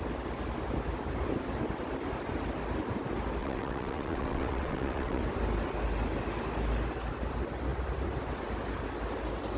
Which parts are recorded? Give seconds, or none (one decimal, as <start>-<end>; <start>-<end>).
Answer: 0.0-3.4; 5.2-9.6

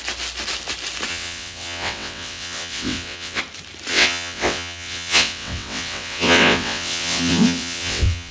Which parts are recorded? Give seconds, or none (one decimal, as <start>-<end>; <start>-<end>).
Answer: 0.0-1.1; 3.4-3.9

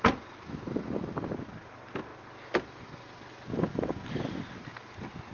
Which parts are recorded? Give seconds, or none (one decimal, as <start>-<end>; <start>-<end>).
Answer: 0.0-5.3

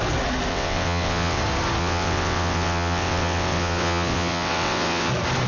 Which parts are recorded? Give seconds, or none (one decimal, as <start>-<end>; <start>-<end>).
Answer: 0.0-0.5; 1.4-1.8; 5.1-5.5

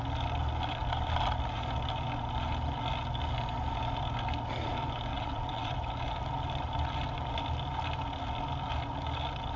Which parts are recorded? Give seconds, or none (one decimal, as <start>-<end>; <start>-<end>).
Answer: 0.0-5.1; 5.7-9.6

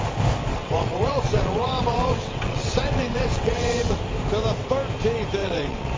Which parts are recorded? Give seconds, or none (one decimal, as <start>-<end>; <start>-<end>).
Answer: 0.0-0.5; 4.0-5.4

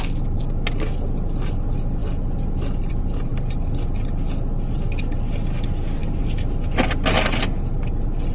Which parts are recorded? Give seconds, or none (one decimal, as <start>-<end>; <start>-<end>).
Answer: 0.0-8.3

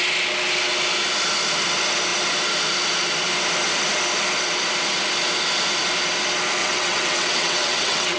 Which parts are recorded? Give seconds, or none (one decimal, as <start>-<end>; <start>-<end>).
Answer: 0.0-6.6